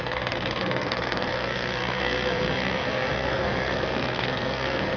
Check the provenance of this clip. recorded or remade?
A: remade